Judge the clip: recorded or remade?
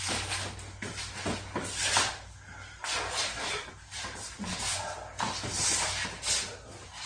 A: recorded